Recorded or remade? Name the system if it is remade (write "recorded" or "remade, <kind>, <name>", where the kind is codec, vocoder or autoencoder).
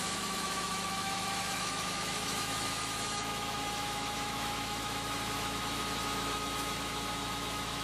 remade, autoencoder, DAC-VAE